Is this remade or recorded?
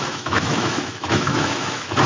remade